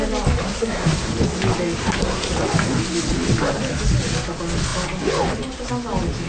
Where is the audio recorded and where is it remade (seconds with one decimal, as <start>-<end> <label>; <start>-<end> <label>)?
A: 0.0-0.4 recorded; 0.4-1.1 remade; 1.1-1.8 recorded; 1.8-2.3 remade; 2.3-6.3 recorded